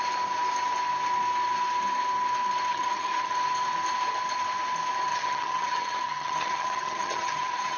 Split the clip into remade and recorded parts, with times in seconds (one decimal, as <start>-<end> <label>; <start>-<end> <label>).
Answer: 0.0-2.7 recorded; 2.7-3.3 remade; 3.3-5.1 recorded; 5.1-7.8 remade